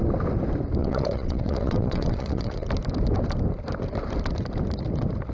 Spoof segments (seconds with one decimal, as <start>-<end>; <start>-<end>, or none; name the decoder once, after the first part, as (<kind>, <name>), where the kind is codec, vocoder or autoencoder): 0.8-2.7 (vocoder, WaveNeXt)